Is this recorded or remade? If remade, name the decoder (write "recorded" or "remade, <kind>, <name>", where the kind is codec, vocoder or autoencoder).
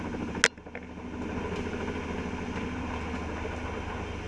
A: recorded